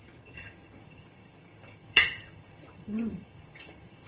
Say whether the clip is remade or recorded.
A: remade